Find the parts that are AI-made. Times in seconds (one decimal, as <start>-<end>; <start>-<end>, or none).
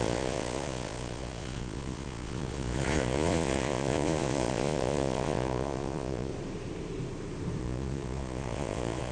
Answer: 0.0-6.3; 7.6-9.1